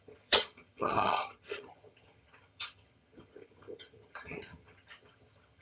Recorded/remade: remade